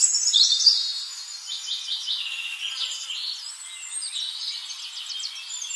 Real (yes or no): yes